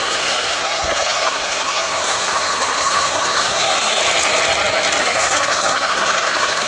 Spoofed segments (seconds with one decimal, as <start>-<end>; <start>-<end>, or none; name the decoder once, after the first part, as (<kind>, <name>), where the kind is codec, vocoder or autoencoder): 0.0-4.0 (codec, SNAC); 5.0-6.7